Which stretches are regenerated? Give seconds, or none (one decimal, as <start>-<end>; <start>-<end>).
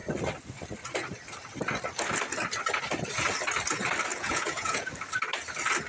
4.1-4.9